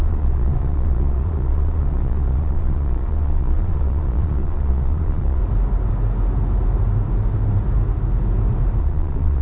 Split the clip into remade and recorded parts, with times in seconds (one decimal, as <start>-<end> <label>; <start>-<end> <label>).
0.0-5.4 remade; 5.4-8.8 recorded; 8.8-9.4 remade